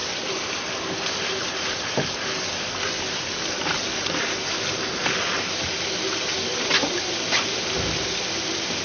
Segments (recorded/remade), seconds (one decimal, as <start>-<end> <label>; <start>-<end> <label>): 0.0-8.8 recorded